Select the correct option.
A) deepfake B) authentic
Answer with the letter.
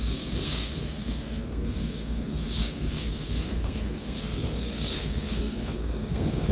A